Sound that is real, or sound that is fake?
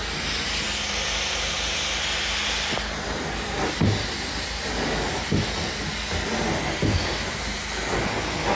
real